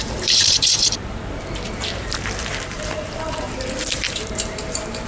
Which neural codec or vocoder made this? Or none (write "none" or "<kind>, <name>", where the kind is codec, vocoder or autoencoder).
vocoder, BigVGAN v2